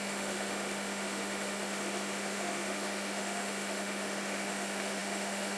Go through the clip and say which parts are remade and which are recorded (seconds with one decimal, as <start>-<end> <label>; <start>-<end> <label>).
0.0-5.6 remade